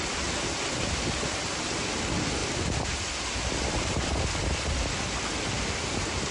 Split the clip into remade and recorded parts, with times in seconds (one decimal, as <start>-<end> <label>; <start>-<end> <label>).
0.0-6.3 recorded